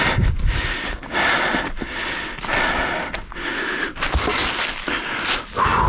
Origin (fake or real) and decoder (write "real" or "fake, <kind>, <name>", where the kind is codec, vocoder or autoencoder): real